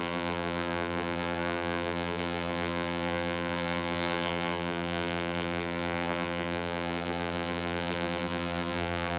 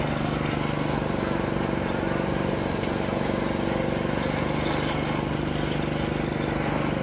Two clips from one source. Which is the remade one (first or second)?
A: first